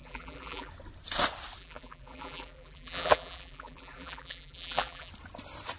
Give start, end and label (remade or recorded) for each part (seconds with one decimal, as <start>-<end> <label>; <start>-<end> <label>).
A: 0.0-0.7 remade; 0.7-1.6 recorded; 1.6-5.1 remade; 5.1-5.8 recorded